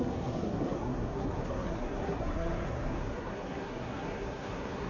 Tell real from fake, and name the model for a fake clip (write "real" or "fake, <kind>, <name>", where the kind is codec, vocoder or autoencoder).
fake, codec, SNAC